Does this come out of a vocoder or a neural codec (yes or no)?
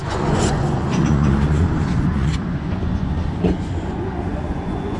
yes